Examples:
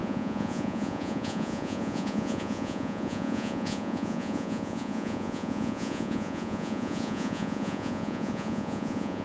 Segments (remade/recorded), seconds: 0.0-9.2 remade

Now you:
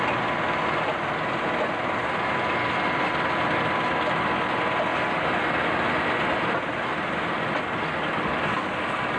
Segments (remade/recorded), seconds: 0.0-9.2 recorded

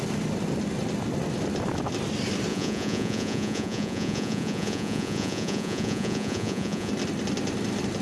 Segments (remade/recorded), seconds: 0.0-2.5 recorded; 2.5-6.9 remade; 6.9-8.0 recorded

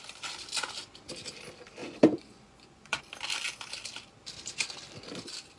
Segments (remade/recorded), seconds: 0.0-1.8 recorded; 1.8-3.0 remade; 3.0-5.6 recorded

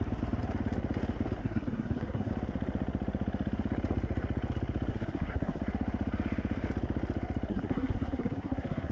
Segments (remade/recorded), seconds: 0.0-1.4 recorded; 1.4-2.3 remade; 2.3-4.9 recorded; 4.9-5.6 remade; 5.6-7.5 recorded; 7.5-8.9 remade

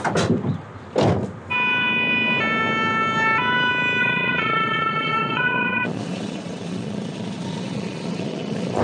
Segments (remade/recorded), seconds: 0.0-4.0 recorded; 4.0-8.8 remade

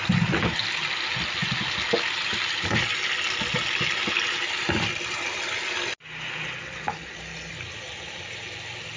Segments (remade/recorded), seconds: 0.0-9.0 recorded